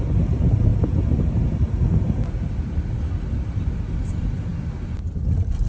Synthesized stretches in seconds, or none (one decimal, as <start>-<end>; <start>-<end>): 4.5-5.7